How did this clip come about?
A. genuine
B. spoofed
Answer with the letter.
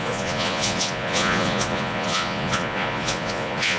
B